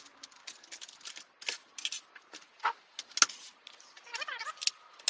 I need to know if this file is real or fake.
real